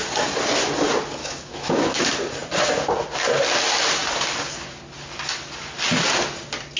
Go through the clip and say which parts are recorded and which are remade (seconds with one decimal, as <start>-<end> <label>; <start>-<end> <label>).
0.0-1.2 recorded; 1.2-2.0 remade; 2.0-6.8 recorded

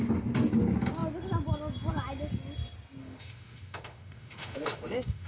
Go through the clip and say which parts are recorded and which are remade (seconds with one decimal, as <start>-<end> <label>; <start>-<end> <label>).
0.0-3.0 recorded; 3.0-5.3 remade

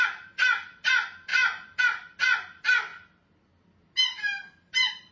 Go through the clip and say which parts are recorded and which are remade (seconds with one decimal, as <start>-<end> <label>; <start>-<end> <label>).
0.0-5.1 recorded